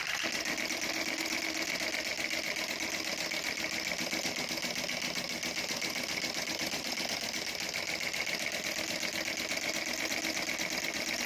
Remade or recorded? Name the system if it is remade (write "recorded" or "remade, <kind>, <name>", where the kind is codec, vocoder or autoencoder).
recorded